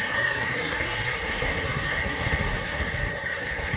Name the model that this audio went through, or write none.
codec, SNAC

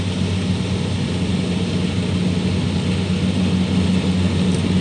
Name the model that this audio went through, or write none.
none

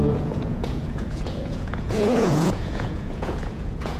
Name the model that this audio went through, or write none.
vocoder, Vocos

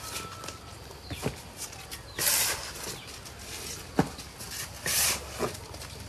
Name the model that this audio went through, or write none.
none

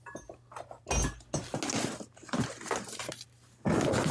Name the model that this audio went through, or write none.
none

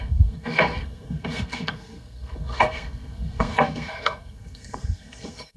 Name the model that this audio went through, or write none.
codec, SNAC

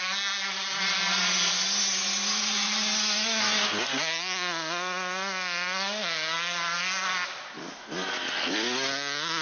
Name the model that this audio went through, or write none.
none